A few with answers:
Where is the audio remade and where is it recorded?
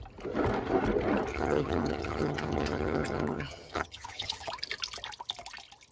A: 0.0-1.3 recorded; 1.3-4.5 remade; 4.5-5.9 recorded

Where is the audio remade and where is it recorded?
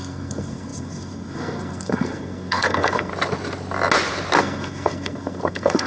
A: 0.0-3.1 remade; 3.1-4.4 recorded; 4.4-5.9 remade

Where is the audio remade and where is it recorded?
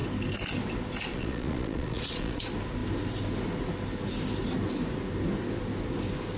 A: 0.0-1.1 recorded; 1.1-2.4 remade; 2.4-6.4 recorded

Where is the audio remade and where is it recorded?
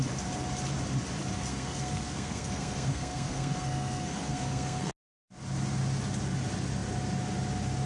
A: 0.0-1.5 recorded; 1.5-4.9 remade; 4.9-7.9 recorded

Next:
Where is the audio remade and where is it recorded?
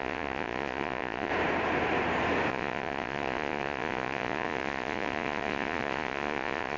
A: 0.0-1.3 remade; 1.3-2.5 recorded; 2.5-6.8 remade